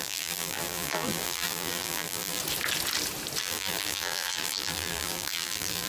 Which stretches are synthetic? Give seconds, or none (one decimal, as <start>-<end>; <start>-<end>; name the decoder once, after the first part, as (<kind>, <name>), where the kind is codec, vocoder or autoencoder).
0.0-2.4 (vocoder, BigVGAN v2); 3.4-5.9